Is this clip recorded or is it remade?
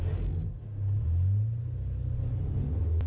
recorded